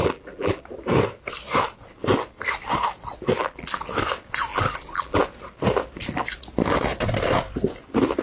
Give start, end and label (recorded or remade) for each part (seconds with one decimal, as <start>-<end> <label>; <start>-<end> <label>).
0.0-0.6 remade; 0.6-3.4 recorded; 3.4-3.9 remade; 3.9-4.5 recorded; 4.5-5.2 remade; 5.2-8.2 recorded